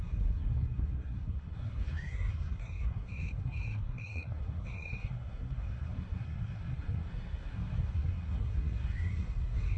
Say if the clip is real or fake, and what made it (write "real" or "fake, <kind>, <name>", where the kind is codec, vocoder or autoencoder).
fake, codec, SNAC